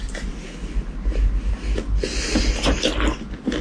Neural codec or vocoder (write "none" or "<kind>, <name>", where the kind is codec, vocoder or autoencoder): none